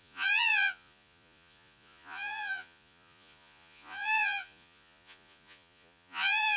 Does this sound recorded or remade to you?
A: remade